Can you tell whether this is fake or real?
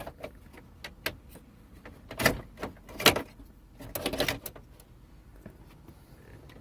real